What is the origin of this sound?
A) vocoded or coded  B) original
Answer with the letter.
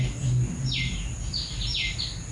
B